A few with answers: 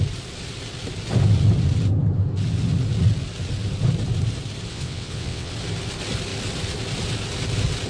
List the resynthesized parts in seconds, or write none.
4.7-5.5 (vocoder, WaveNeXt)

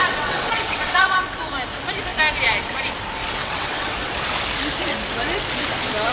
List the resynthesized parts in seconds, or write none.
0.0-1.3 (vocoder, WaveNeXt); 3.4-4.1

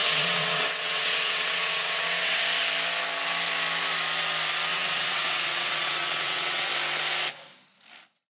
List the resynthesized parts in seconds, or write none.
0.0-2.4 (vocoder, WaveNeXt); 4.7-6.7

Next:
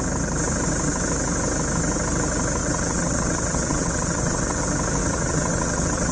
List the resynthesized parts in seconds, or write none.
2.6-4.6 (vocoder, WaveNeXt); 5.0-6.1

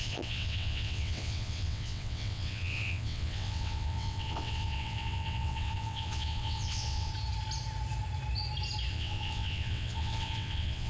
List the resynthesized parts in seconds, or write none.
0.0-7.1 (vocoder, WaveNeXt); 8.9-10.9

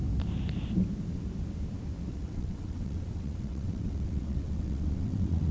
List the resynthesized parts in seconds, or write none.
2.1-5.5 (vocoder, WaveNeXt)

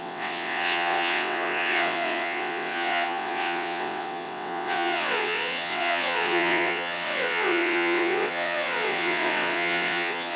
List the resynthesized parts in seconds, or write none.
0.0-10.4 (vocoder, WaveNeXt)